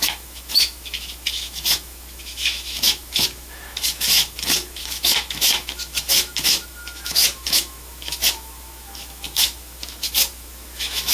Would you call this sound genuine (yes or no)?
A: no